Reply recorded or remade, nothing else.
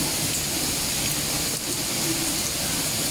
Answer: recorded